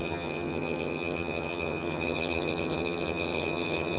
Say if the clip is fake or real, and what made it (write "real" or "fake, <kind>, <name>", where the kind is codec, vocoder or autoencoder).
fake, vocoder, HiFi-GAN